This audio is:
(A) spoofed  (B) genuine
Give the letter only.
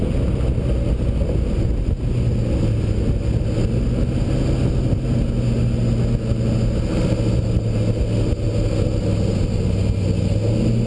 B